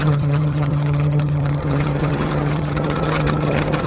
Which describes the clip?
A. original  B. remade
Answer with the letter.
B